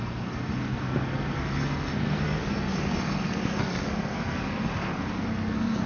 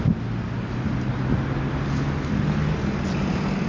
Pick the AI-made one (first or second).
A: first